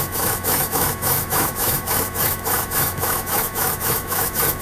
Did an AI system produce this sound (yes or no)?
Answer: yes